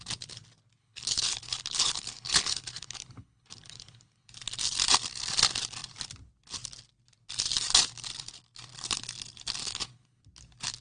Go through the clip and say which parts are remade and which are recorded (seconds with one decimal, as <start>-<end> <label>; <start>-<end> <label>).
0.0-0.8 recorded; 0.8-4.3 remade; 4.3-9.6 recorded; 9.6-10.2 remade; 10.2-10.8 recorded